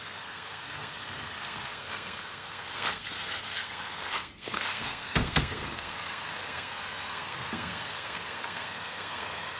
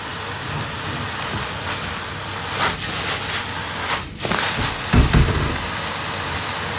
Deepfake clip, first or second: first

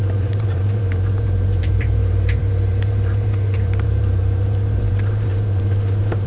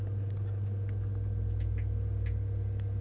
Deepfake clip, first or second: first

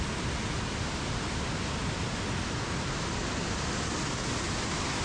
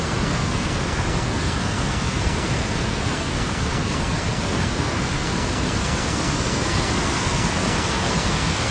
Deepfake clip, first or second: second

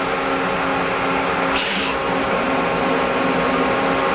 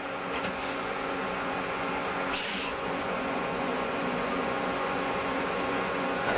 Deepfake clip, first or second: second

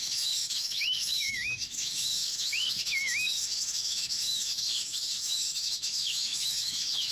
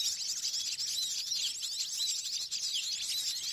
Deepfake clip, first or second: first